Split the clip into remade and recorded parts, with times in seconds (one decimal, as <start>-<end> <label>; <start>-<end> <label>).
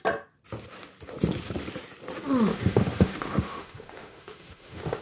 0.0-2.5 recorded; 2.5-5.0 remade